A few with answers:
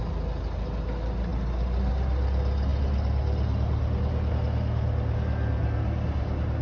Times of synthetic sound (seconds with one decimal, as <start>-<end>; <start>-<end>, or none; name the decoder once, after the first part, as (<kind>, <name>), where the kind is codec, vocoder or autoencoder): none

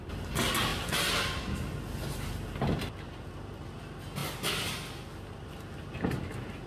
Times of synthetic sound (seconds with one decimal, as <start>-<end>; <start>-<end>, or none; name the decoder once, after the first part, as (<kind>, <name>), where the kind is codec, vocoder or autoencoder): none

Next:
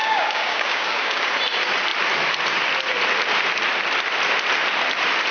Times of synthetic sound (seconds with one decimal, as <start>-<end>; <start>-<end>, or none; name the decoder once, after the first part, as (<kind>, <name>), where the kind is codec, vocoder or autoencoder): 0.0-1.2 (codec, DAC)

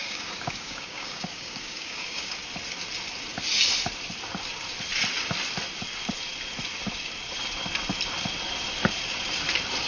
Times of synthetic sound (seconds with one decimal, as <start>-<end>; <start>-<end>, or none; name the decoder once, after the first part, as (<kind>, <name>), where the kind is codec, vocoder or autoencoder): 0.0-2.3 (codec, DAC)

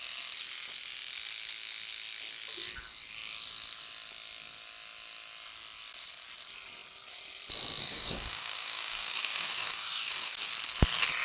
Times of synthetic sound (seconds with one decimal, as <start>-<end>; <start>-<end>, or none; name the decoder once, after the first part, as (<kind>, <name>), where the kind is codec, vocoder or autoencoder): 7.8-10.5 (codec, DAC)

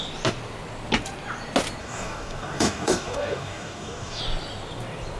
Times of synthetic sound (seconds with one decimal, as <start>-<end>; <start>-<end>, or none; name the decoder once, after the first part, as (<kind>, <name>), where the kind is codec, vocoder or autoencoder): 1.8-4.2 (codec, DAC)